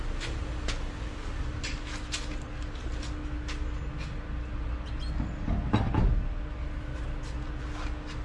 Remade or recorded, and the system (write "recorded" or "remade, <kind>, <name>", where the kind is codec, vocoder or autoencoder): recorded